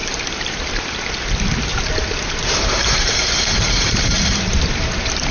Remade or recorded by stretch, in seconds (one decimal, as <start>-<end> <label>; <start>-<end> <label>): 0.0-0.7 remade; 0.7-1.7 recorded; 1.7-5.3 remade